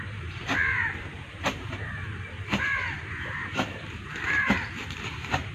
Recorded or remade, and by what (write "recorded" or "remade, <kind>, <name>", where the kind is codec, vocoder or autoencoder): remade, vocoder, BigVGAN v2